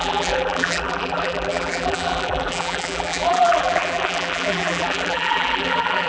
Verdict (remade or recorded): remade